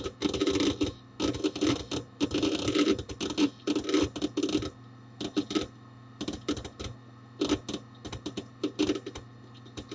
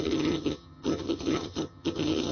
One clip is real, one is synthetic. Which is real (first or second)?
first